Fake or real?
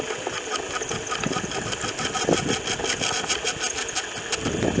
real